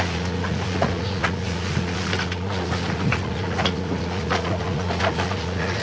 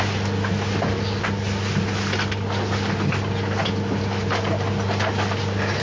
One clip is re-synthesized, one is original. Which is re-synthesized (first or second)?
first